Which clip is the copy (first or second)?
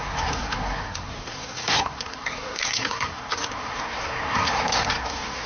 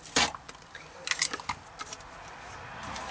first